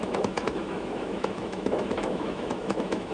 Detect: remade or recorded remade